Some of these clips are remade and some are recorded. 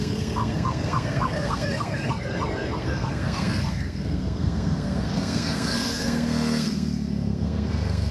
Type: remade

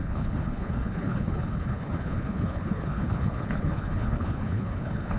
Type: remade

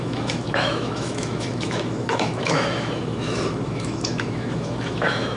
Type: remade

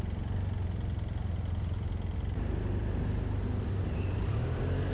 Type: recorded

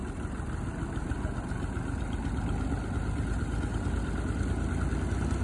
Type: recorded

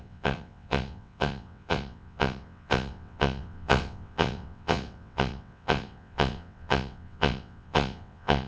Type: remade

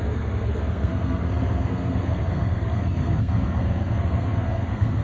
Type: remade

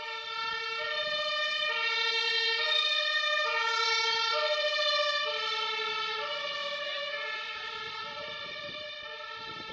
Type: remade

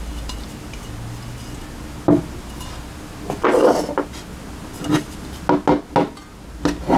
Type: recorded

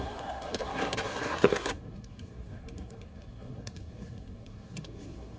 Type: remade